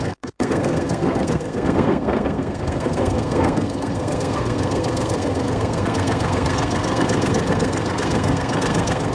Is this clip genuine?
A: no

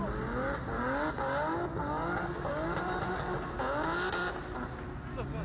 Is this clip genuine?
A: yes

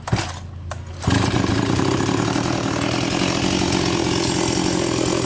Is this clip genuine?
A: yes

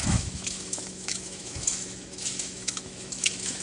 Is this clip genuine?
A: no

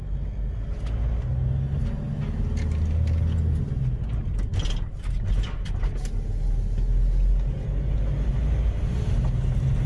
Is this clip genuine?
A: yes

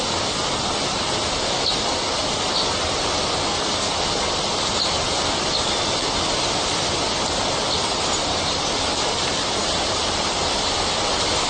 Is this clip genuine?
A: yes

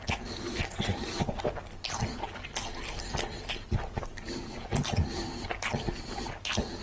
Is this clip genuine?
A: yes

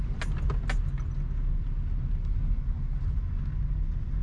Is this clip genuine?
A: yes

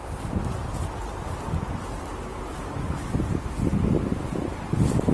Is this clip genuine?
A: yes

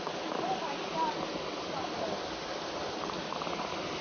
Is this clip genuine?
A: yes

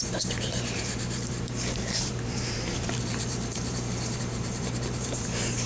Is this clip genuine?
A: no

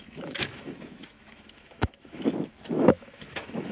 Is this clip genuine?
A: no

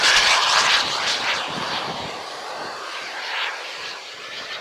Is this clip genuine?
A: no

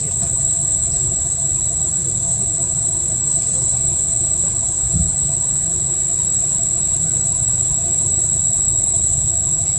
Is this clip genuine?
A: yes